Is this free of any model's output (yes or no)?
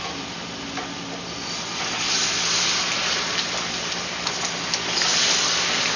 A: yes